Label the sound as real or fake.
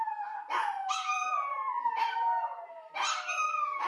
real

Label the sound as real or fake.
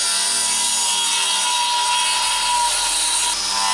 real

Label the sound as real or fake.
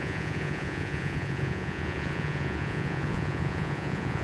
fake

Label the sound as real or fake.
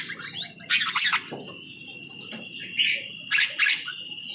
real